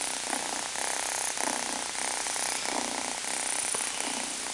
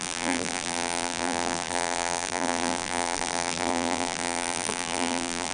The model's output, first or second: second